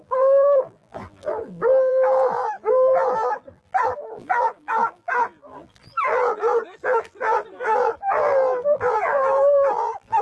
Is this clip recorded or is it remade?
remade